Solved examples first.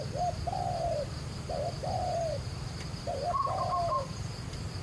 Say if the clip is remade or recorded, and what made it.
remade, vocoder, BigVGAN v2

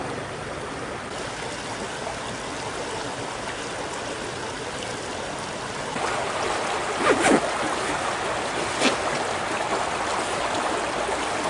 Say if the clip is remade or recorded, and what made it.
recorded